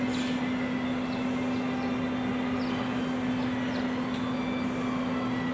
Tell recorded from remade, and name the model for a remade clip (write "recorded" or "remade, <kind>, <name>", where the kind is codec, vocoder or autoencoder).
recorded